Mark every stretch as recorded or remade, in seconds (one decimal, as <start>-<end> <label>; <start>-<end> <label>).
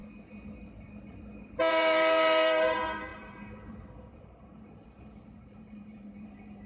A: 0.0-1.7 recorded; 1.7-6.7 remade